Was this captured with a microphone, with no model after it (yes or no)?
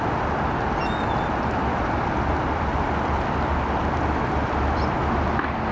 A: yes